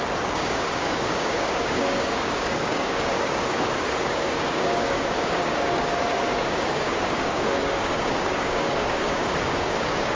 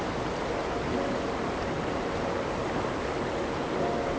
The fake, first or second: first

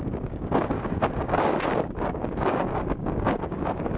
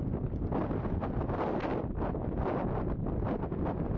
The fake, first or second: first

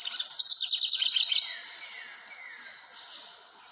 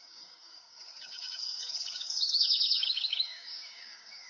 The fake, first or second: second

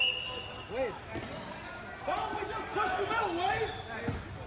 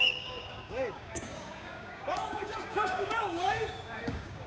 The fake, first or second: second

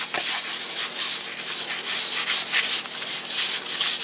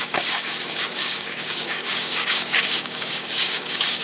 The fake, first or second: second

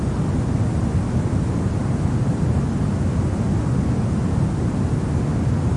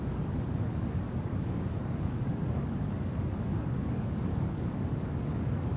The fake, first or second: second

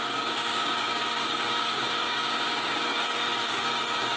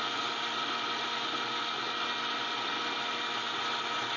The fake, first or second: first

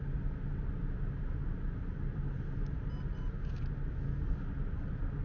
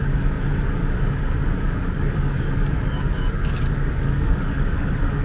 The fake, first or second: second